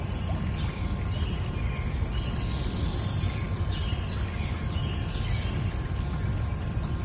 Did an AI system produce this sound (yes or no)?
no